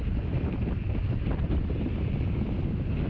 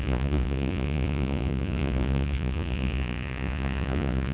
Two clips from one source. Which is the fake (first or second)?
second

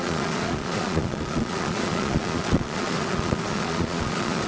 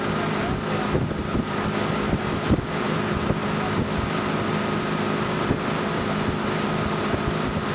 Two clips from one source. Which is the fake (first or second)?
first